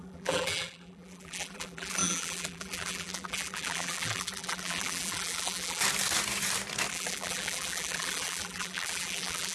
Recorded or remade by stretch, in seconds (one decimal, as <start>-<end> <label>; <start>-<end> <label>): 0.0-5.8 remade; 5.8-6.9 recorded; 6.9-9.5 remade